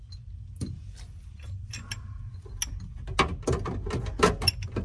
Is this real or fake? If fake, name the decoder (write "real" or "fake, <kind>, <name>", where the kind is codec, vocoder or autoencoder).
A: real